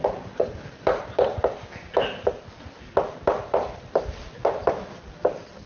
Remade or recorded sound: recorded